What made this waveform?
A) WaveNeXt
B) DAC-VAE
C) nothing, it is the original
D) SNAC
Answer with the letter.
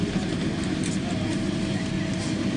C